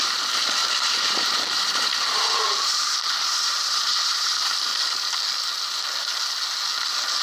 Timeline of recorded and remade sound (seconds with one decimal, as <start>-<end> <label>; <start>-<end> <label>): 0.0-4.7 remade; 4.7-7.2 recorded